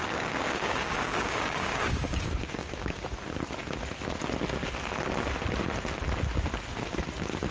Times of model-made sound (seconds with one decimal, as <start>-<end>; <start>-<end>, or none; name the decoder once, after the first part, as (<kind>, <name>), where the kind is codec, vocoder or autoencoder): 0.0-3.0 (codec, DAC)